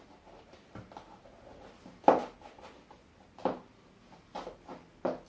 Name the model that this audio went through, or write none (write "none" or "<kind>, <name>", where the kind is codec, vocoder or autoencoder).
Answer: none